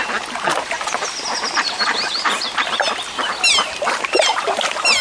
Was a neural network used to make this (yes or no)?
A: no